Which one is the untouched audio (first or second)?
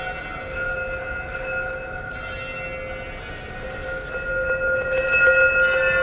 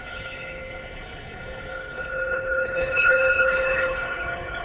first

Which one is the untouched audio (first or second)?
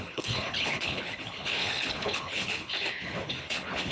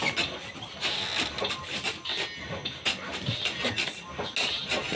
second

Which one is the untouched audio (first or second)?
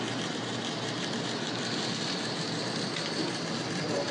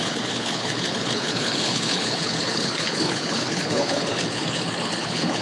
first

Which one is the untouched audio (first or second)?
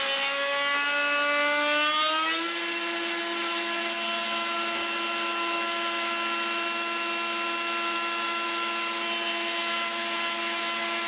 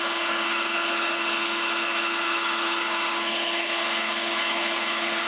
first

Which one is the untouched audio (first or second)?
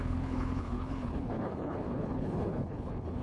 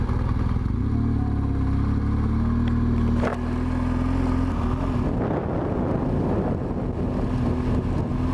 second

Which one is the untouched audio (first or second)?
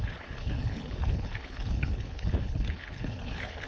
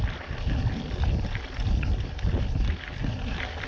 second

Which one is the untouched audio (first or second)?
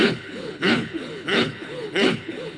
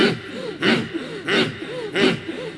second